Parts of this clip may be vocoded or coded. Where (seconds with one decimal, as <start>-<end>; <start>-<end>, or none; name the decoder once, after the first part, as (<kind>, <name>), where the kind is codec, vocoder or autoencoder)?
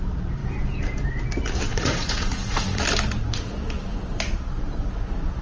1.7-2.8 (vocoder, Vocos)